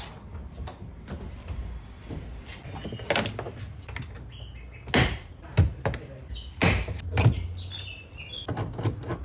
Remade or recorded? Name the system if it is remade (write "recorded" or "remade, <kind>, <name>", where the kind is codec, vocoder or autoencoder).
recorded